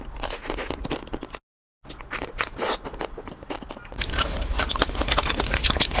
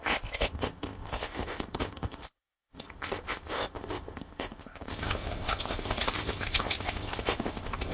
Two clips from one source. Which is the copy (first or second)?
second